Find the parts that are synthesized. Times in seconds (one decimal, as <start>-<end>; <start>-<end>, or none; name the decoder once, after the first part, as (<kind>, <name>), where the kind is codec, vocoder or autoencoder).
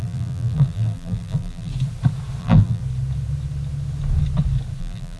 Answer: 0.0-1.7 (vocoder, BigVGAN v2); 2.4-2.8; 4.8-5.2